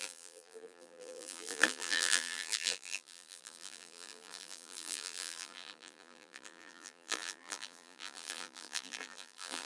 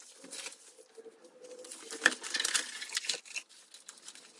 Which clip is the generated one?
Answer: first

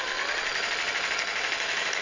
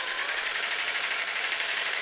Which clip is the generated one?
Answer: second